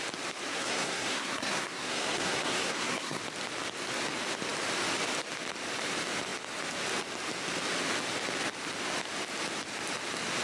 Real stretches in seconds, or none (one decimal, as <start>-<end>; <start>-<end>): 0.0-0.5; 3.2-10.4